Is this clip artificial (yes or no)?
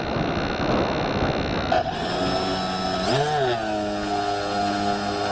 no